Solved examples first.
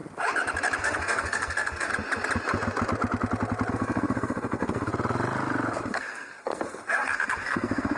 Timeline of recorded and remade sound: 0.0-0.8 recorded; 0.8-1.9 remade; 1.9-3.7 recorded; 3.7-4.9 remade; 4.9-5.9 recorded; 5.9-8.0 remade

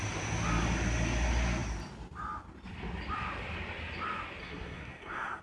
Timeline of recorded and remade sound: 0.0-4.4 recorded; 4.4-5.4 remade

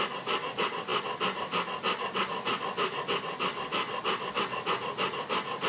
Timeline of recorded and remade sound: 0.0-5.7 recorded

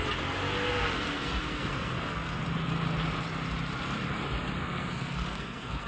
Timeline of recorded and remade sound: 0.0-0.7 recorded; 0.7-2.4 remade; 2.4-4.6 recorded; 4.6-5.9 remade

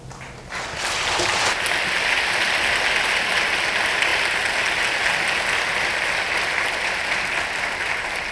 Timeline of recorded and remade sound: 0.0-8.3 recorded

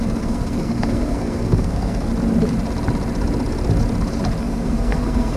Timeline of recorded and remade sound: 0.0-2.1 remade; 2.1-4.4 recorded; 4.4-5.4 remade